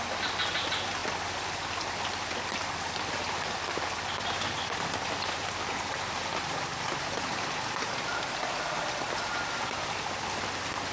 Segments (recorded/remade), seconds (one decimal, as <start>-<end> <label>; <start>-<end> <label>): 0.0-10.9 recorded

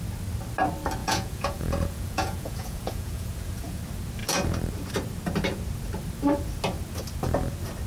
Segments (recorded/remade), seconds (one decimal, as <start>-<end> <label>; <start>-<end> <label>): 0.0-1.0 recorded; 1.0-3.8 remade; 3.8-7.9 recorded

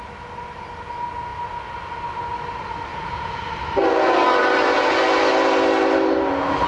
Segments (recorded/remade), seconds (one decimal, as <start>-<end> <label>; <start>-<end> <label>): 0.0-2.9 recorded; 2.9-3.5 remade; 3.5-6.7 recorded

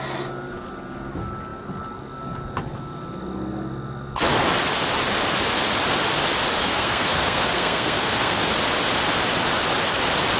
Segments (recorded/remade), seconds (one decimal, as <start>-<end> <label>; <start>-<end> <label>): 0.0-6.6 recorded; 6.6-8.5 remade; 8.5-10.4 recorded

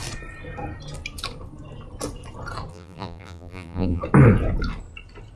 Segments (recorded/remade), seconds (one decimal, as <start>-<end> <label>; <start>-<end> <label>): 0.0-2.7 recorded; 2.7-4.0 remade; 4.0-5.4 recorded

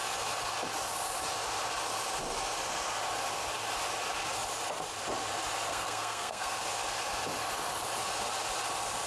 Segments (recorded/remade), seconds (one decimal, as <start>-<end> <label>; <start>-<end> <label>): 0.0-5.7 recorded; 5.7-6.6 remade; 6.6-9.1 recorded

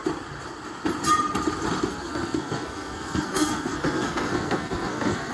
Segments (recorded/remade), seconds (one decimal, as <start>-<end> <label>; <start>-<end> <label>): 0.0-1.9 recorded; 1.9-5.3 remade

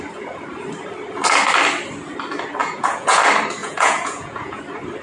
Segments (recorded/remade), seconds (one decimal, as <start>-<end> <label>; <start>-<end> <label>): 0.0-2.6 recorded; 2.6-3.2 remade; 3.2-3.6 recorded; 3.6-4.6 remade; 4.6-5.0 recorded